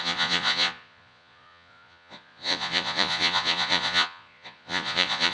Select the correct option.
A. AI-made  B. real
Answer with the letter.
A